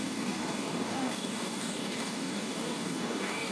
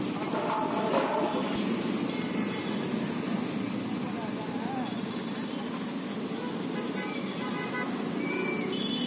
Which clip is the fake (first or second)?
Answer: first